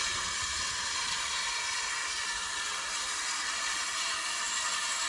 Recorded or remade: recorded